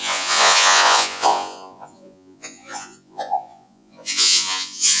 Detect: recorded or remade remade